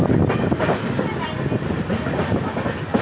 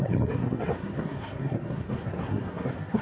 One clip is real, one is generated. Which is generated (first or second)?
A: second